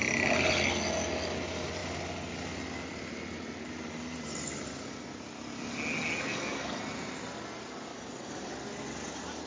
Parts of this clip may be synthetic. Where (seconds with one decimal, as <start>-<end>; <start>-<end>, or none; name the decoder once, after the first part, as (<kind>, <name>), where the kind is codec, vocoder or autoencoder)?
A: 6.3-6.8 (codec, DAC); 7.9-8.5